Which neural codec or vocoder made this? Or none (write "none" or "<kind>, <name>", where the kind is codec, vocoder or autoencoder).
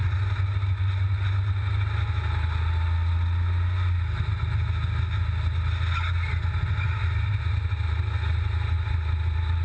none